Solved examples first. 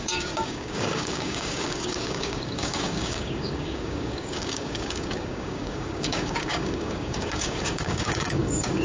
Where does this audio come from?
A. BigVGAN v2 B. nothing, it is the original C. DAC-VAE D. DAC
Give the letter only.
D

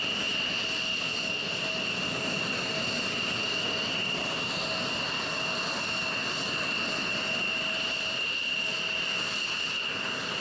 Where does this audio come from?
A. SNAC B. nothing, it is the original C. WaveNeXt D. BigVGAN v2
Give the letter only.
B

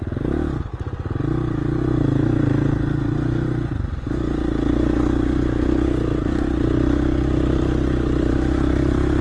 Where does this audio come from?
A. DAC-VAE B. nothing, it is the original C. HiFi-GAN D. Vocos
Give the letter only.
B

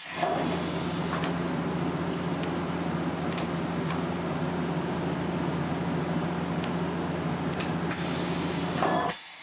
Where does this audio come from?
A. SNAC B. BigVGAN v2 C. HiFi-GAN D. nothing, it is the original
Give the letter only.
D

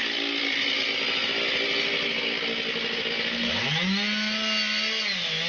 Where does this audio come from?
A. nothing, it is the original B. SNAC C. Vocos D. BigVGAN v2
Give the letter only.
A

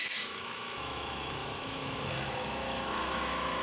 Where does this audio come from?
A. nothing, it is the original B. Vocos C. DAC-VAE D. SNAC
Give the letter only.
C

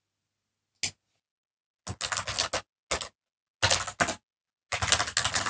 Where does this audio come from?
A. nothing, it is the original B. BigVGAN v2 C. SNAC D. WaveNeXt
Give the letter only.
A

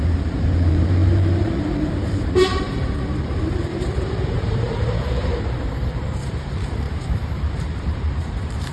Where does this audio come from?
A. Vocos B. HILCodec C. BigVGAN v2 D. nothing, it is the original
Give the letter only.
C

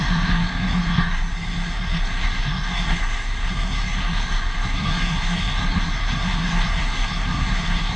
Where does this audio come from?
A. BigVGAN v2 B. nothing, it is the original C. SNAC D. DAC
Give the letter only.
C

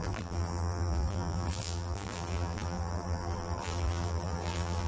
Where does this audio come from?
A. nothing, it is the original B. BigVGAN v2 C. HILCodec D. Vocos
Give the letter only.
B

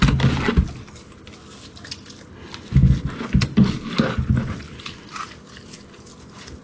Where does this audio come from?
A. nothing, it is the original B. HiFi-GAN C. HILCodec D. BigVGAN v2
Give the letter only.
A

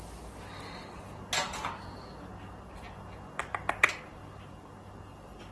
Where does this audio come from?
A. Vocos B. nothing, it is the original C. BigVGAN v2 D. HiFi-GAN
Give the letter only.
B